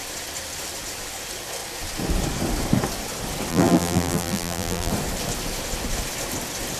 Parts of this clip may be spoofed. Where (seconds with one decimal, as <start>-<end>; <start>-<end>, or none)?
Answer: 3.5-4.9